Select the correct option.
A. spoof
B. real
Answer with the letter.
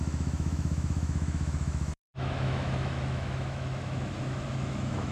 A